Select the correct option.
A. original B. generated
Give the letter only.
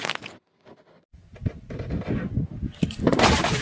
A